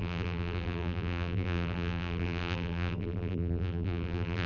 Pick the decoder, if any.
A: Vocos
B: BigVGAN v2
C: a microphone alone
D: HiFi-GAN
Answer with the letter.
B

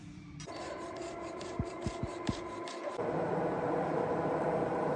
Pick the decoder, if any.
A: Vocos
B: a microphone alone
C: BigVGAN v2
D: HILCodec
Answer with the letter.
C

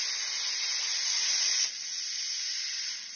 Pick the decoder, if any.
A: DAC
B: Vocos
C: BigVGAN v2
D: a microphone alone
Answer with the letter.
D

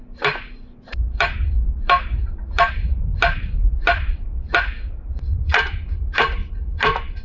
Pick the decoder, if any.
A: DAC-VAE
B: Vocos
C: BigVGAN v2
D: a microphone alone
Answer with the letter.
C